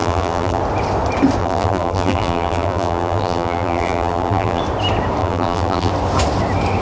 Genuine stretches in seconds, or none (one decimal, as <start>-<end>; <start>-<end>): 0.6-1.4; 4.6-5.2; 5.9-6.8

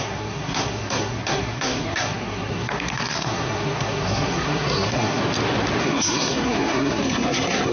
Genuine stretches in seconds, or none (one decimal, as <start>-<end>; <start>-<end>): 5.2-5.8